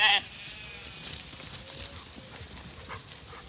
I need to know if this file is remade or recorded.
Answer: recorded